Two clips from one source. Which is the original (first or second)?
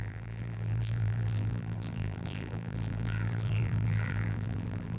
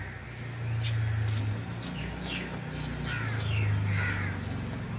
second